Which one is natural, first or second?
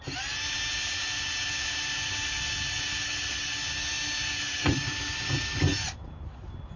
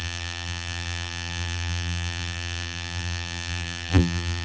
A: first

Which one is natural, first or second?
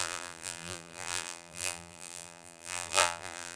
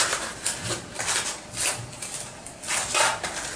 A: second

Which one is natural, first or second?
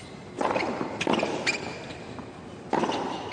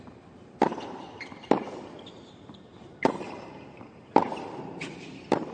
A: first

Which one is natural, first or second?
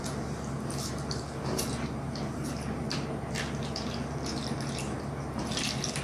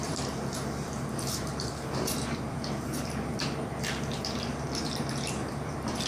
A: first